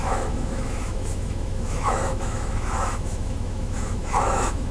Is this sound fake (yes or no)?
yes